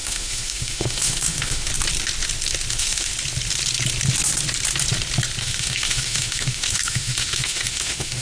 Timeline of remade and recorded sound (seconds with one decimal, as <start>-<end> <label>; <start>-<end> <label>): 0.0-1.7 remade; 1.7-2.7 recorded; 2.7-3.1 remade; 3.1-5.4 recorded; 5.4-8.2 remade